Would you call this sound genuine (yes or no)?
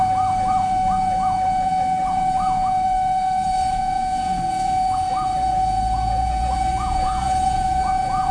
no